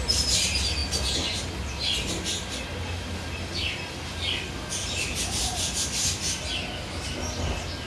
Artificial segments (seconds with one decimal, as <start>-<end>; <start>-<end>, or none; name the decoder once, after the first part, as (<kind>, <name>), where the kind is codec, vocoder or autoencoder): none